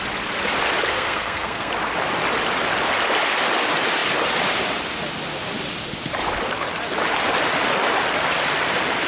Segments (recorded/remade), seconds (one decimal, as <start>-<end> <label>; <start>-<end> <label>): 0.0-0.9 recorded; 0.9-1.7 remade; 1.7-9.1 recorded